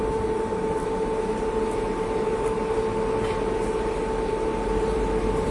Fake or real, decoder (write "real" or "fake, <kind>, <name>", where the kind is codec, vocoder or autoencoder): real